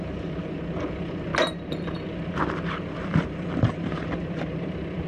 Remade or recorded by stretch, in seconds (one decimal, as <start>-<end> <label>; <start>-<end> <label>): 0.0-1.3 remade; 1.3-2.1 recorded; 2.1-5.1 remade